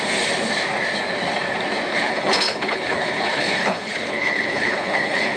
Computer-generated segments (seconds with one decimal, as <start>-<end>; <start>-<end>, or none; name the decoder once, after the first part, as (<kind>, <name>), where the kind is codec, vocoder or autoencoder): 1.9-5.4 (codec, HILCodec)